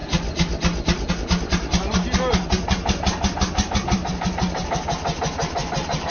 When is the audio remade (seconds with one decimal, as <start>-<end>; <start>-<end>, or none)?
none